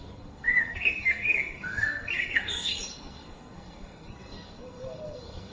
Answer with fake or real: fake